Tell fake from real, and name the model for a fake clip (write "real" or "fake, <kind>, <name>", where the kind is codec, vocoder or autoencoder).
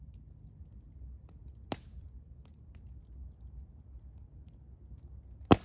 real